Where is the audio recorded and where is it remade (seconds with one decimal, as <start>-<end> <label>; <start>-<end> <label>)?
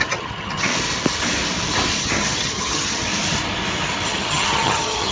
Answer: 0.0-0.7 remade; 0.7-2.0 recorded; 2.0-3.0 remade; 3.0-4.1 recorded; 4.1-5.1 remade